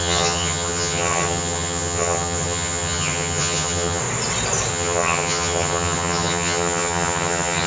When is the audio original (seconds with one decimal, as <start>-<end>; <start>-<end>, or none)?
4.0-4.7